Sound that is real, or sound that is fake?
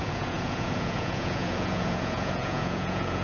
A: fake